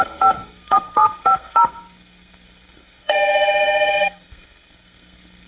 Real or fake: fake